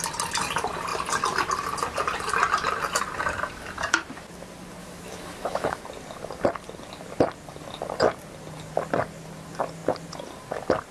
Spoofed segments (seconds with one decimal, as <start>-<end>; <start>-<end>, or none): 4.8-5.8